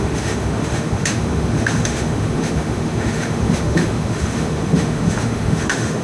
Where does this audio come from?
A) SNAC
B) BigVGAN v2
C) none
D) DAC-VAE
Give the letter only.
D